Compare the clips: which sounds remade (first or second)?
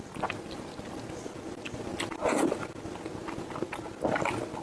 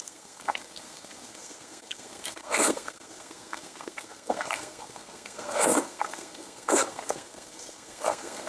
second